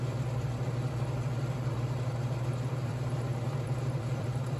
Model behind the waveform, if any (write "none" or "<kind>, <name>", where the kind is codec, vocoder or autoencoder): vocoder, BigVGAN v2